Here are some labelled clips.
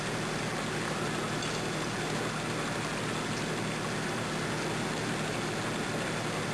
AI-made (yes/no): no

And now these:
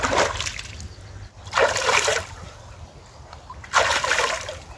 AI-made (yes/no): no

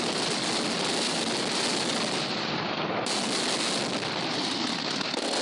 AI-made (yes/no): no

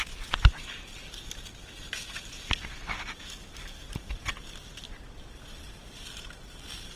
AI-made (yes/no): no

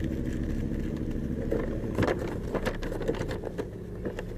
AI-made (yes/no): no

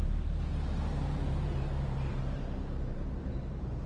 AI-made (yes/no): yes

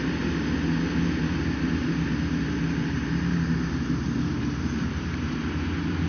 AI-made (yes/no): yes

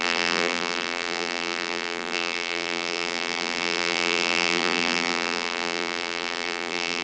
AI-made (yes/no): yes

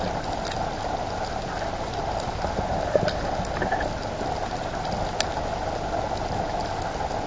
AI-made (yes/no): no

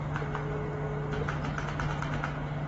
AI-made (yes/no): no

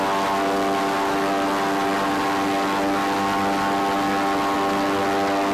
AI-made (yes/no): no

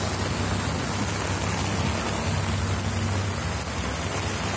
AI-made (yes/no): no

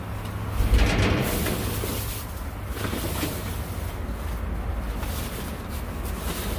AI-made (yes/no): no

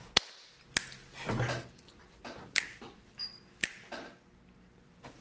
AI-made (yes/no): no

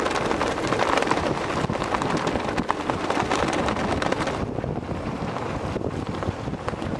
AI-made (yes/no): no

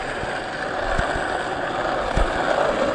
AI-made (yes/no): no